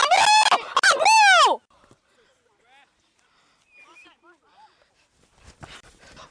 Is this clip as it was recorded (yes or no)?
yes